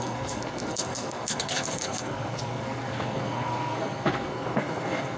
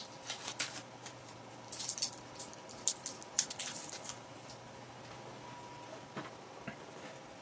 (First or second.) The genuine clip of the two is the second